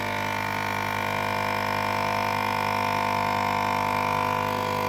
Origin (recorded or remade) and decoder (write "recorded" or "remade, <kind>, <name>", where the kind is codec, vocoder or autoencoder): recorded